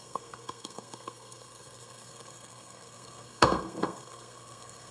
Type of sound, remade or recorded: remade